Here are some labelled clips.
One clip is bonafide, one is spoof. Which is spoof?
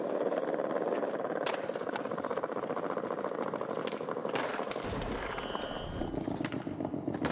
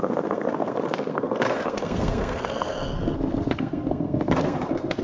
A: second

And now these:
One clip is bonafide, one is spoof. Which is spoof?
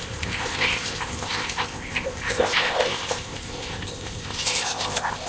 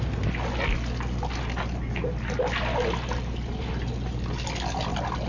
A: first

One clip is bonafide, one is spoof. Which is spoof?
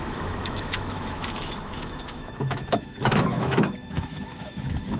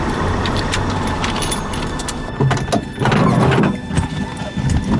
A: first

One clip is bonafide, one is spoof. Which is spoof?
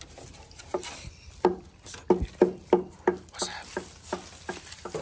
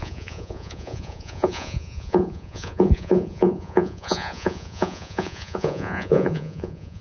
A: second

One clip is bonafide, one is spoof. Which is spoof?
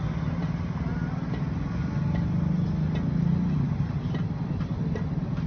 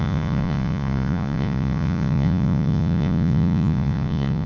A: second